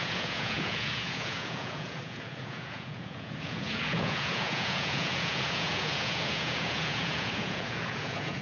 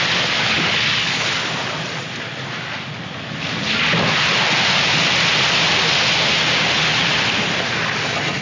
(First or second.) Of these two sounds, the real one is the second